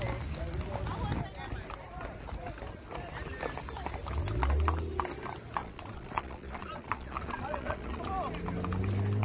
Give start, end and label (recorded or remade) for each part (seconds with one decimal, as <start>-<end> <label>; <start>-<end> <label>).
0.0-5.6 recorded; 5.6-8.0 remade; 8.0-9.2 recorded